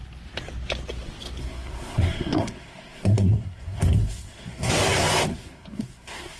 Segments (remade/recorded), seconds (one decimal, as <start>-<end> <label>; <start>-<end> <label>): 0.0-1.4 recorded; 1.4-4.7 remade; 4.7-5.3 recorded; 5.3-6.4 remade